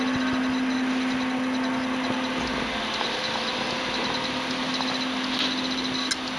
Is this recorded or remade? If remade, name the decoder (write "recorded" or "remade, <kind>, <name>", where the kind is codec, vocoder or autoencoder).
recorded